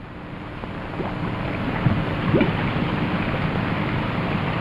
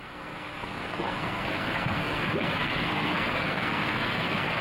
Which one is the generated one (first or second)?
second